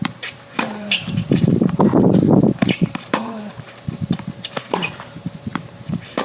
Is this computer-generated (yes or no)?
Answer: yes